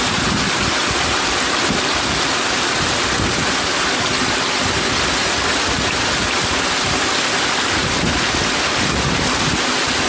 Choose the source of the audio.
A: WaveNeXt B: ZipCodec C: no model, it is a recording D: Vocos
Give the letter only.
C